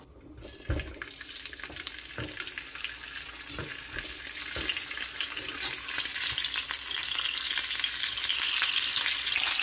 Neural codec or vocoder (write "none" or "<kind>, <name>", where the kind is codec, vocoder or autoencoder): vocoder, BigVGAN v2